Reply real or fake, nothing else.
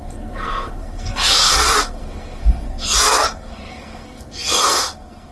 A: fake